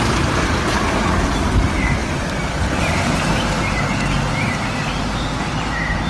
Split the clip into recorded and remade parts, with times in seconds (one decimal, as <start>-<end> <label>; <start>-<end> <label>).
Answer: 0.0-2.0 recorded; 2.0-4.3 remade; 4.3-6.1 recorded